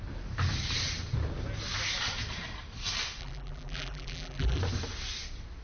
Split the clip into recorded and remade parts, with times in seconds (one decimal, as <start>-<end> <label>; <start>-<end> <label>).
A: 0.0-3.2 recorded; 3.2-4.6 remade; 4.6-5.6 recorded